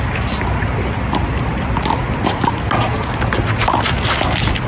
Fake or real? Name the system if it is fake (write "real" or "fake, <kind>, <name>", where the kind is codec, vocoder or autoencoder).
real